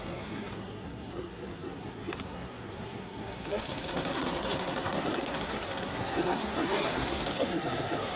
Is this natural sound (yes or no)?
no